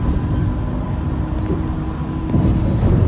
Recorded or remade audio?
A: recorded